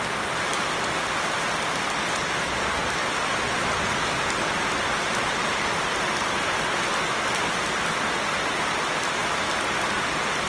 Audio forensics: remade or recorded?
recorded